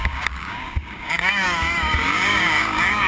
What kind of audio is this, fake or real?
fake